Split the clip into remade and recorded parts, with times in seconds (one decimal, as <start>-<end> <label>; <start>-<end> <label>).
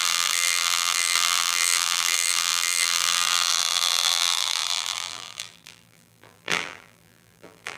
0.0-7.8 remade